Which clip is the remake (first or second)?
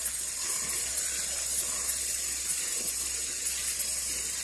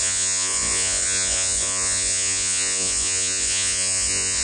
second